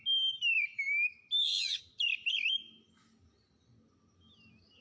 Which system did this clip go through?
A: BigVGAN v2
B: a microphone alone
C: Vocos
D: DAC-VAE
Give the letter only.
B